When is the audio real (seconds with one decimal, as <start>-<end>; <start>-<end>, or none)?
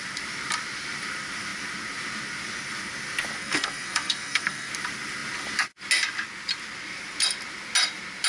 0.0-3.4; 4.7-8.3